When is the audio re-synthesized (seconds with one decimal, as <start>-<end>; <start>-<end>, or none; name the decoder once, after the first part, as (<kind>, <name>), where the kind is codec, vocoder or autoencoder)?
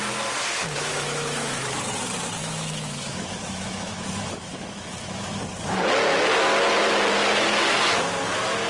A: 0.6-1.8 (autoencoder, DAC-VAE); 2.4-5.4